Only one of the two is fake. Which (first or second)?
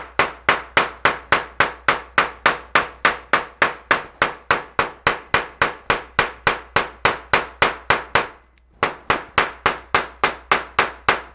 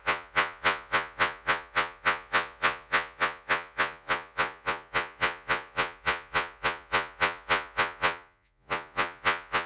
second